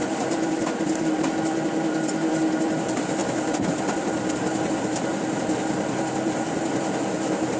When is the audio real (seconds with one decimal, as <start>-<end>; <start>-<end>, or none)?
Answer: none